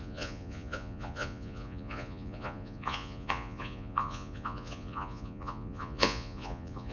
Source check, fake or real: fake